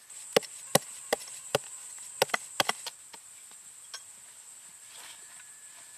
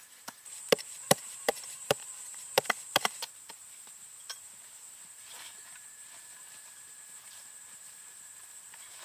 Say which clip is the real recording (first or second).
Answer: first